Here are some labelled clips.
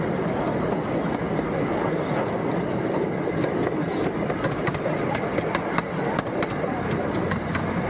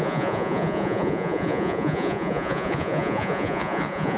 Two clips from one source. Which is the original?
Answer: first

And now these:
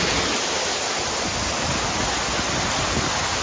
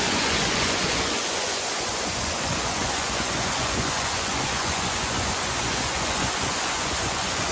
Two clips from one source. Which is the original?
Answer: first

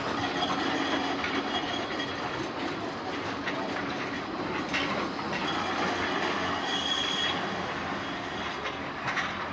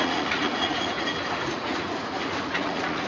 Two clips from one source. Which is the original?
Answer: first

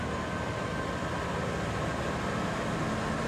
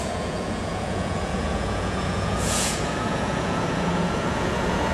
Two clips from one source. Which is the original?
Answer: first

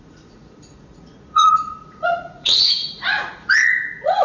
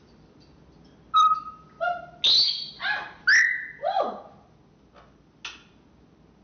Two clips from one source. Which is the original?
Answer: second